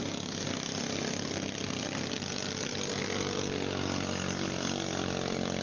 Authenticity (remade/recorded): recorded